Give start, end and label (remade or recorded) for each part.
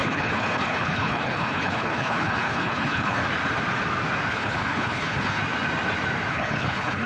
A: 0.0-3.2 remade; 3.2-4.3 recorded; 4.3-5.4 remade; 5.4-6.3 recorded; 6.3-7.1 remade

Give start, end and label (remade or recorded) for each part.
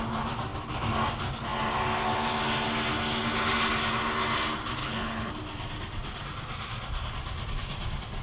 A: 0.0-4.8 recorded; 4.8-5.3 remade; 5.3-8.2 recorded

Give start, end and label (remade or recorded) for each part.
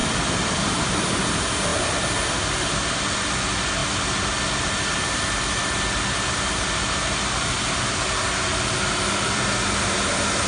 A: 0.0-10.5 recorded